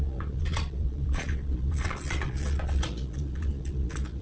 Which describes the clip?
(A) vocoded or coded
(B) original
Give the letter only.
A